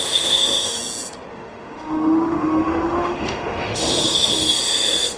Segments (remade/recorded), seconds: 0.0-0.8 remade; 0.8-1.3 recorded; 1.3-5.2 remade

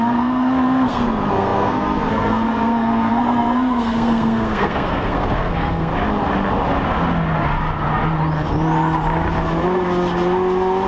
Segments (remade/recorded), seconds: 0.0-5.9 remade; 5.9-10.9 recorded

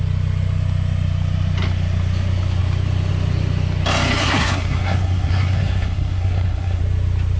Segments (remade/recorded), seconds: 0.0-4.2 recorded; 4.2-6.8 remade; 6.8-7.4 recorded

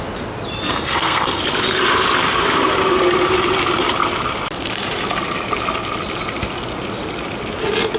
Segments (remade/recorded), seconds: 0.0-0.7 recorded; 0.7-1.4 remade; 1.4-8.0 recorded

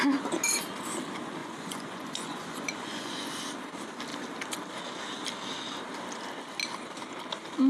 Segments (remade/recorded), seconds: 0.0-1.4 recorded; 1.4-3.3 remade; 3.3-7.7 recorded